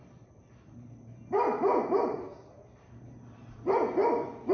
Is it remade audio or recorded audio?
recorded